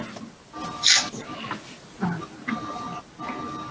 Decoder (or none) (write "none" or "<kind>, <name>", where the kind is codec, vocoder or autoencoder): none